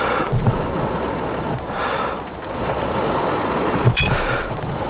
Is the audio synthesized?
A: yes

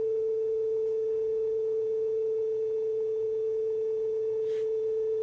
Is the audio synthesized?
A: no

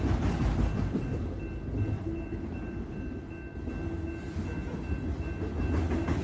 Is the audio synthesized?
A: no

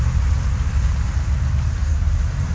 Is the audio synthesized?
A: no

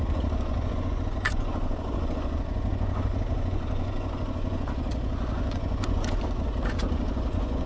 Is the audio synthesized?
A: yes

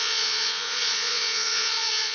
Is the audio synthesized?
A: yes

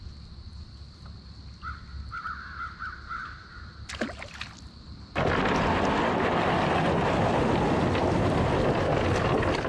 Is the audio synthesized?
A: no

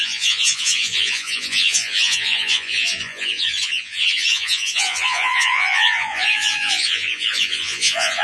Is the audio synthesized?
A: yes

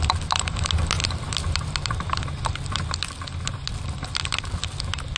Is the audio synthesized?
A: no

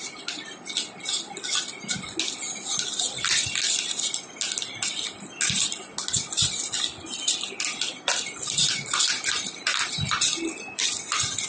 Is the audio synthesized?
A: no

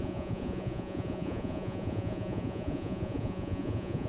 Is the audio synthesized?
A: yes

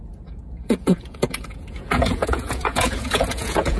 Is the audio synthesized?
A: yes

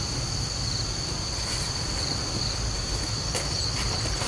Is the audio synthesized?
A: no